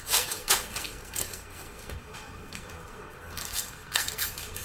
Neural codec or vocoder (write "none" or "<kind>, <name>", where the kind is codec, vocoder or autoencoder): codec, SNAC